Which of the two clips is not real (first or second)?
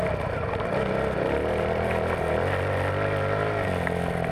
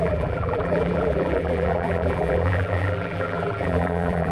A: second